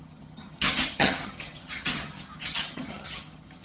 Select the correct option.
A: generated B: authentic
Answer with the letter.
A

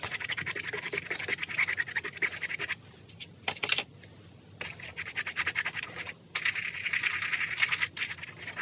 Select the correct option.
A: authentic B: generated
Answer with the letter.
A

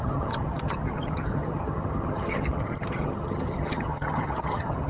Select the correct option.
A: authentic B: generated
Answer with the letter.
B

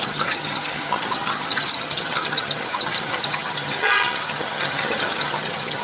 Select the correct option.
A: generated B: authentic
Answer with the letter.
A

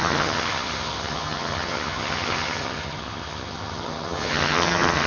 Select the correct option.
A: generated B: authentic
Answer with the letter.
A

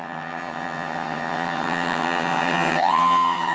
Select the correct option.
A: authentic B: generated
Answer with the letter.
B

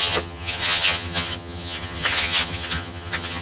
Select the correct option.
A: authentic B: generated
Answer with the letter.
B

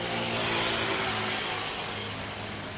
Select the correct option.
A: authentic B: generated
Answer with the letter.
A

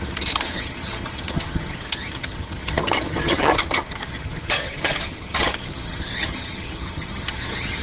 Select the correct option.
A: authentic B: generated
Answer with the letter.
B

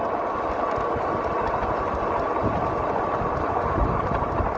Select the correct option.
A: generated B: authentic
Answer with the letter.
B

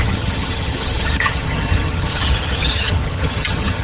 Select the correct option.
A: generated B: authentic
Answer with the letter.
A